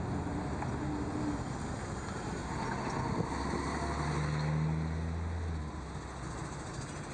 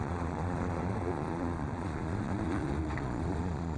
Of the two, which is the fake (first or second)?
second